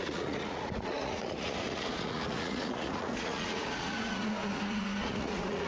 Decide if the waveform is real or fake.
fake